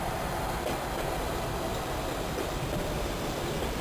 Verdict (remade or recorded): remade